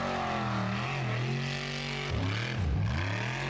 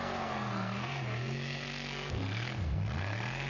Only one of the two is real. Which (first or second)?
first